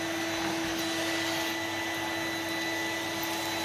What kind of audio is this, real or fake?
real